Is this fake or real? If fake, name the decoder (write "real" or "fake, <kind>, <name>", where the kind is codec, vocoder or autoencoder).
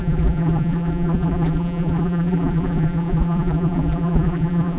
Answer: fake, vocoder, BigVGAN v2